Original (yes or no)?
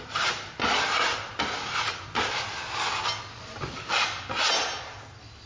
yes